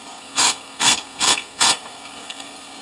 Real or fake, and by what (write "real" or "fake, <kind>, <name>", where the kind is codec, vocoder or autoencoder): fake, codec, SNAC